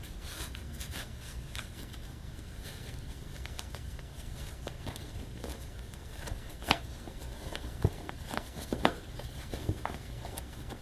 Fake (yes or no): yes